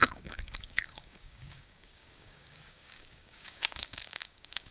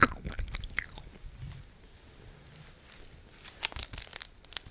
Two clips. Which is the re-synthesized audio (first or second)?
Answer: first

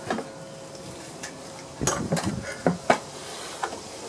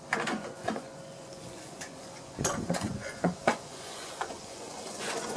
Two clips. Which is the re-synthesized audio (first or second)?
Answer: second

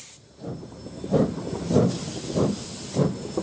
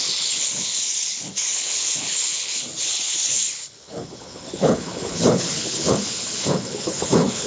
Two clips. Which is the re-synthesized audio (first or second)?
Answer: second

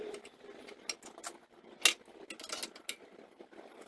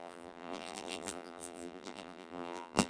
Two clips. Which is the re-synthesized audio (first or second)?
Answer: second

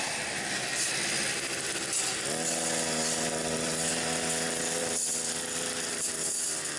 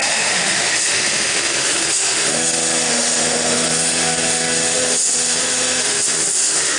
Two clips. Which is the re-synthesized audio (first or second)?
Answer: second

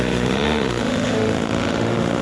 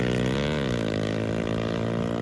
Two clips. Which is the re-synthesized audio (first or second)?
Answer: first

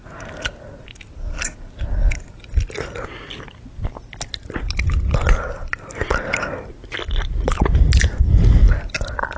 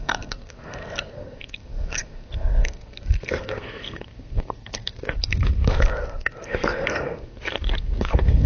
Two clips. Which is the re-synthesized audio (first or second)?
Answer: second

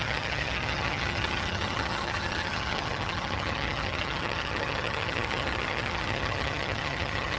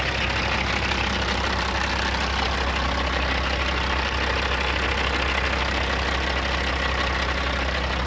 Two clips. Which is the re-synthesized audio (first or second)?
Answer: first